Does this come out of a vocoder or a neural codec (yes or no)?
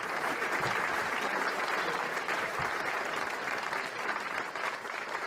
yes